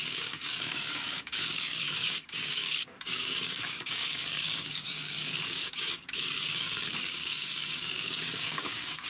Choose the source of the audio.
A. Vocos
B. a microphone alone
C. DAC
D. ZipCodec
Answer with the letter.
C